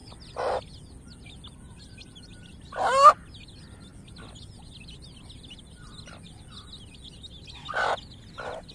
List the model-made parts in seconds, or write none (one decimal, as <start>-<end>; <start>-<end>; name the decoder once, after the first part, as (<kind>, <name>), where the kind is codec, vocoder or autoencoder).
none